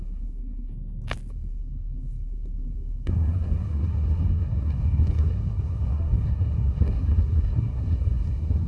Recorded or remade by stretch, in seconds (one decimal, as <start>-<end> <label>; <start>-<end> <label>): 0.0-0.7 remade; 0.7-1.3 recorded; 1.3-8.7 remade